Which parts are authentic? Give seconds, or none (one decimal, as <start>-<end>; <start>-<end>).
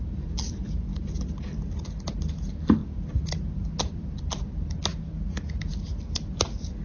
0.0-6.8